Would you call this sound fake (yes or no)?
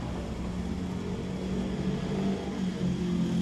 no